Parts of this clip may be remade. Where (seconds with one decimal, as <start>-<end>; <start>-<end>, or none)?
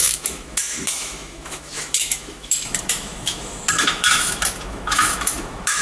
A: 0.0-5.8